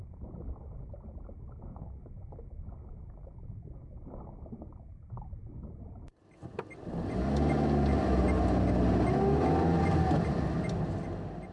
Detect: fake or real real